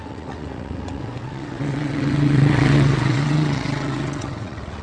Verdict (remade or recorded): remade